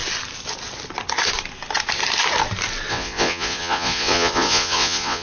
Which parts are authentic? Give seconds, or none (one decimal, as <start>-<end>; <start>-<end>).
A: 0.0-2.9